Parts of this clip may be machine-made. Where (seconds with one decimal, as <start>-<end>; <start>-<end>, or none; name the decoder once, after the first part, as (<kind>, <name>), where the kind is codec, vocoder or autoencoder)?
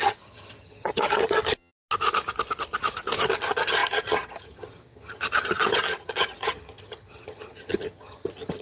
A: 0.0-1.7 (vocoder, HiFi-GAN); 3.3-8.6